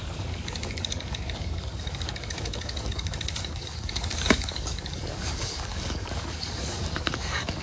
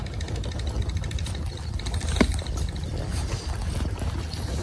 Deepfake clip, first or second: first